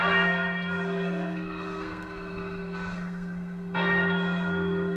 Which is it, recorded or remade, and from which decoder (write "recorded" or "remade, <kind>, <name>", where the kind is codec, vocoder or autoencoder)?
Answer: remade, codec, SNAC